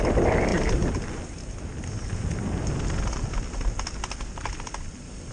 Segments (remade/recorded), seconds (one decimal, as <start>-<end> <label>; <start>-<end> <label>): 0.0-5.3 recorded